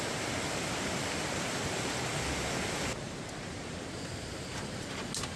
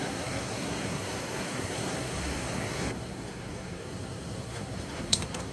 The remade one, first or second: second